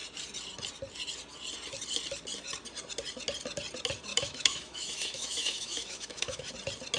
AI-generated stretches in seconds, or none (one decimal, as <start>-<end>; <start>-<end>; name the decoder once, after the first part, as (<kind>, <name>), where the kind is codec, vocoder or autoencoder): 4.1-6.5 (autoencoder, DAC-VAE)